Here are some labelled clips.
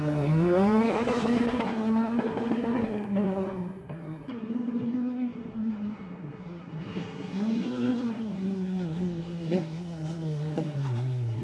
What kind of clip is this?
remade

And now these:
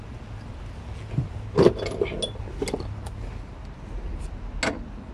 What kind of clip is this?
recorded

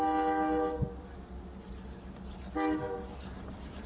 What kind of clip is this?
recorded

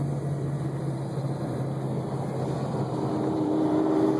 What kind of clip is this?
recorded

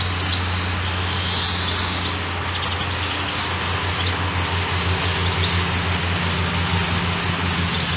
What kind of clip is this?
recorded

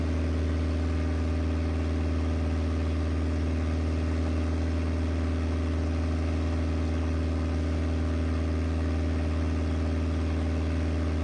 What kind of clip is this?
recorded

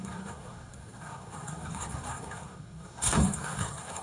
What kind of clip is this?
remade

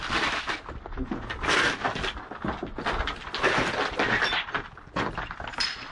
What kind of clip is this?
recorded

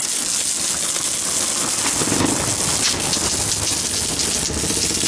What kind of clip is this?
recorded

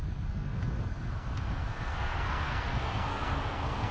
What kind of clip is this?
remade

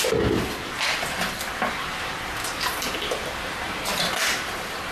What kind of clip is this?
recorded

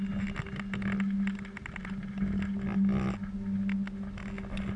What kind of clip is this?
recorded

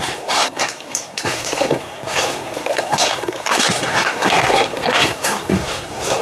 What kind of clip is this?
remade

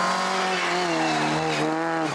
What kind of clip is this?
recorded